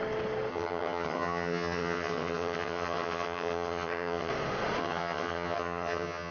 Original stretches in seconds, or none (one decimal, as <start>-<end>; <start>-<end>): 0.0-0.5; 4.3-4.8